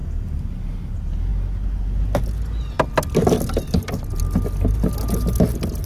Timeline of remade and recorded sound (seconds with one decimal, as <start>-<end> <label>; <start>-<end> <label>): 0.0-5.9 recorded